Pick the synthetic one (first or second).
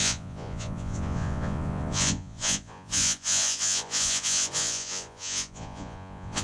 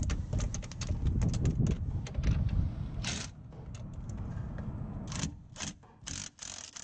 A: first